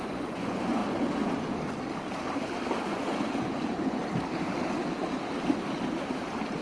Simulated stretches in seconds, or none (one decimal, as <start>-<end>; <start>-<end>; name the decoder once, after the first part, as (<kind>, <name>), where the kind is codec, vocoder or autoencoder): 0.0-0.8 (vocoder, Vocos); 2.8-4.0